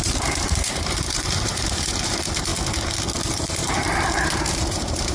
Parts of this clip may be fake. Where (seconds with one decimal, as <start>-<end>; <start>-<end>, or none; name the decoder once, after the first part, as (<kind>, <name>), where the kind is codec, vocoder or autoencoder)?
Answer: 0.0-2.5 (vocoder, BigVGAN v2); 3.2-5.1